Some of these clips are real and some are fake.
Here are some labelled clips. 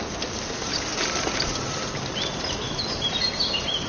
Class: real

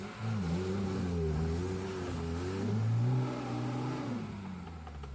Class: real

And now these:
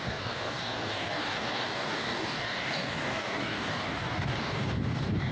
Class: fake